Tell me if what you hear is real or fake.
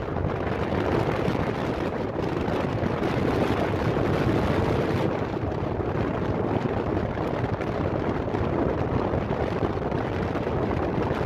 real